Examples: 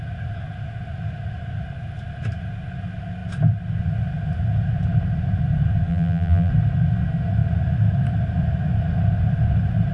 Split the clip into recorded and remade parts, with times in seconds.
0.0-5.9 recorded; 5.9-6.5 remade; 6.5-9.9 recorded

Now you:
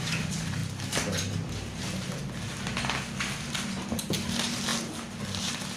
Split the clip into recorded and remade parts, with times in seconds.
0.0-0.6 remade; 0.6-1.5 recorded; 1.5-2.2 remade; 2.2-3.7 recorded; 3.7-4.7 remade; 4.7-5.8 recorded

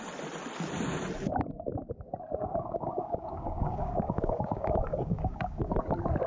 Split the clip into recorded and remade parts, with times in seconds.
0.0-2.4 recorded; 2.4-5.7 remade; 5.7-6.3 recorded

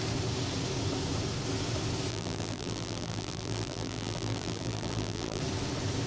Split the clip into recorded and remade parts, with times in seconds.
0.0-2.1 recorded; 2.1-5.4 remade; 5.4-6.1 recorded

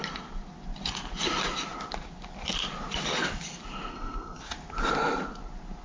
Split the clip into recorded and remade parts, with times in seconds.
0.0-3.9 recorded; 3.9-4.4 remade; 4.4-5.8 recorded

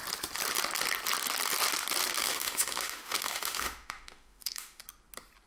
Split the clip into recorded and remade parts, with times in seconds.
0.0-2.2 recorded; 2.2-4.8 remade; 4.8-5.5 recorded

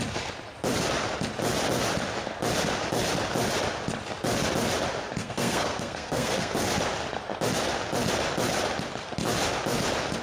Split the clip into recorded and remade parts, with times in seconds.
0.0-5.2 recorded; 5.2-6.7 remade; 6.7-10.2 recorded